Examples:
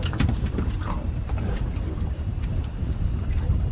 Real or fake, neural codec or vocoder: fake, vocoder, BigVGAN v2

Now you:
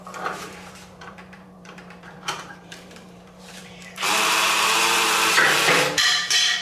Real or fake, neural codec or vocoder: fake, vocoder, BigVGAN v2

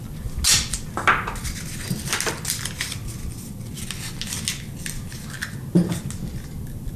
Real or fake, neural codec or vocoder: real